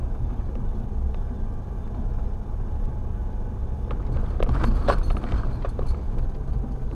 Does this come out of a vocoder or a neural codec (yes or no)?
no